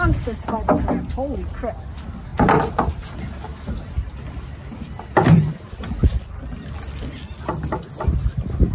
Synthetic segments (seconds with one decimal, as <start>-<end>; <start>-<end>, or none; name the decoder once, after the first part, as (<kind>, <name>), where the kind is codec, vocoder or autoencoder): none